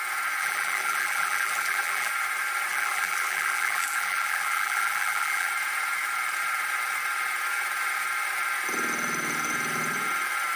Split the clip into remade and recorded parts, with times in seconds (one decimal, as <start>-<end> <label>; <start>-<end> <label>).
0.0-0.4 recorded; 0.4-2.1 remade; 2.1-2.7 recorded; 2.7-5.5 remade; 5.5-10.6 recorded

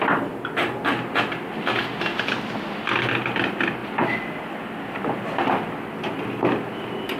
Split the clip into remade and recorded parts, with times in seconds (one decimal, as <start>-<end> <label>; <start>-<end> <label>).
0.0-7.2 recorded

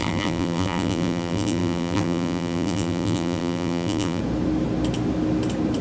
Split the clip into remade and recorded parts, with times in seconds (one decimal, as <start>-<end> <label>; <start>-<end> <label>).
0.0-4.2 remade; 4.2-5.8 recorded

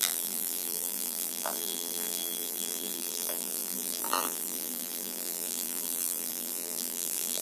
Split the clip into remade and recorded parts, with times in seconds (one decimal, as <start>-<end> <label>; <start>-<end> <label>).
0.0-7.4 remade

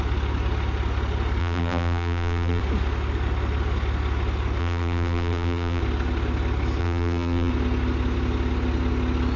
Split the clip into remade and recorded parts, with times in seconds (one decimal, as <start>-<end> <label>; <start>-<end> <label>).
0.0-1.4 recorded; 1.4-2.6 remade; 2.6-4.6 recorded; 4.6-5.8 remade; 5.8-6.8 recorded; 6.8-7.5 remade; 7.5-9.4 recorded

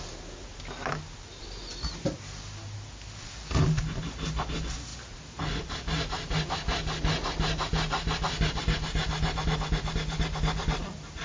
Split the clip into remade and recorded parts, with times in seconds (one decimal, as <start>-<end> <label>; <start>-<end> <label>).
0.0-11.2 recorded

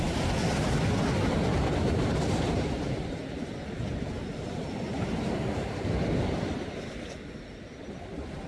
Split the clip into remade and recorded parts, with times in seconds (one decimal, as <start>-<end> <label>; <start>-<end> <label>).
0.0-1.5 recorded; 1.5-2.9 remade; 2.9-3.9 recorded; 3.9-6.4 remade; 6.4-8.5 recorded